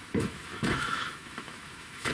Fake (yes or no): yes